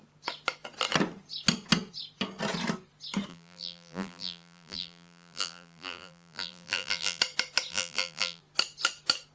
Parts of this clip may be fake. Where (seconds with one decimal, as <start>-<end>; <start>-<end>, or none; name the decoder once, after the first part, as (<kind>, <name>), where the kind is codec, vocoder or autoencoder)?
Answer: 3.3-7.2 (vocoder, BigVGAN v2); 7.7-8.4